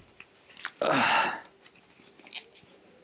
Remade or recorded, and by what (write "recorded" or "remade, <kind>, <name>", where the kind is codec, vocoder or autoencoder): recorded